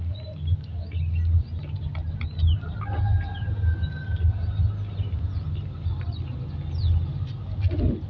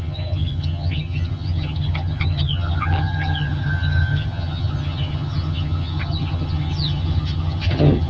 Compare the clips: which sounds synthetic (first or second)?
second